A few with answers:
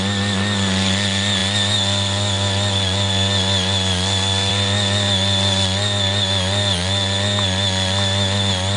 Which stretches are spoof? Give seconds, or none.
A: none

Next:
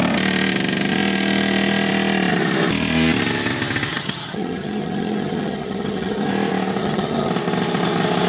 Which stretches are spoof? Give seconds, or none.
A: 3.9-6.3 (vocoder, HiFi-GAN); 6.8-7.3

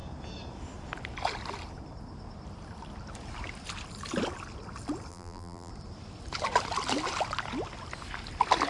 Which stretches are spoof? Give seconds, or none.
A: 5.1-5.7 (vocoder, BigVGAN v2)

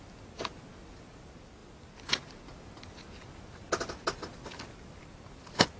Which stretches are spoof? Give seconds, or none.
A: none

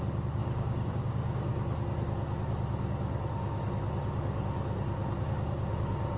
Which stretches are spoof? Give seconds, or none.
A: 0.0-1.5 (codec, DAC); 5.2-6.2

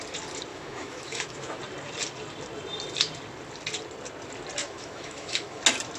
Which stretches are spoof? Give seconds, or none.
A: 0.5-1.6 (autoencoder, DAC-VAE); 4.6-5.6

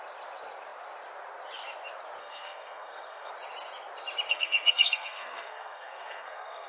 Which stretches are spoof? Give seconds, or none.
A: 2.2-3.3 (codec, SNAC); 4.3-6.7